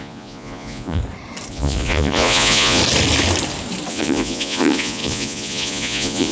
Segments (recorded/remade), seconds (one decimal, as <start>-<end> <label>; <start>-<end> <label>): 0.0-1.0 remade; 1.0-1.5 recorded; 1.5-2.8 remade; 2.8-3.9 recorded; 3.9-6.3 remade